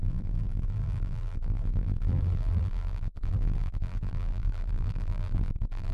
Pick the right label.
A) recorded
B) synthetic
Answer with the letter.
B